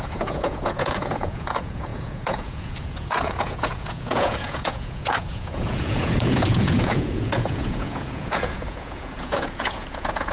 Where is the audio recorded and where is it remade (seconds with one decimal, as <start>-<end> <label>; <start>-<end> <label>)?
0.0-10.3 remade